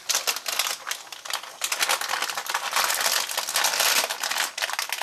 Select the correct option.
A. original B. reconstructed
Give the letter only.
A